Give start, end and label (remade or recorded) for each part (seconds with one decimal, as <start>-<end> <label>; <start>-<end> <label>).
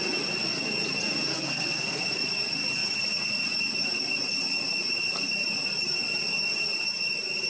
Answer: 0.0-1.3 recorded; 1.3-2.0 remade; 2.0-7.5 recorded